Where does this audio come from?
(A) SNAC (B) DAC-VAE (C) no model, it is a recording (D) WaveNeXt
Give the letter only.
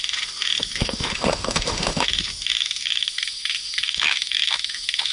B